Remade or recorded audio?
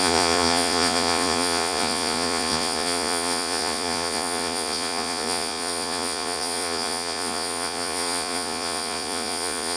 remade